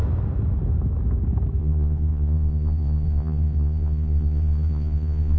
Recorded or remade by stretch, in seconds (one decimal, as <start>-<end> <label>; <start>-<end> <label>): 0.0-1.6 recorded; 1.6-5.4 remade